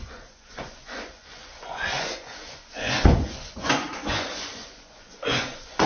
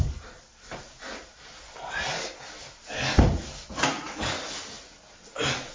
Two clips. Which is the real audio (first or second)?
second